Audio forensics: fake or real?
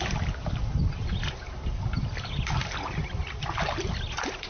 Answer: real